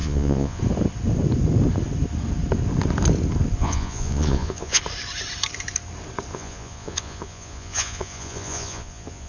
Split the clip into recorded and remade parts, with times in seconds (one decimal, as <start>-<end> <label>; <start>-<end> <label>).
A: 0.0-0.6 remade; 0.6-3.6 recorded; 3.6-4.8 remade; 4.8-6.3 recorded; 6.3-9.3 remade